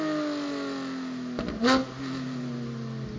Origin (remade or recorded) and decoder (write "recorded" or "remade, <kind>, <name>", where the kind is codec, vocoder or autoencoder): recorded